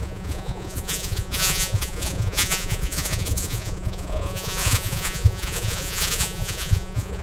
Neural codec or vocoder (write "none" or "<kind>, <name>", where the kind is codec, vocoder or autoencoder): vocoder, Vocos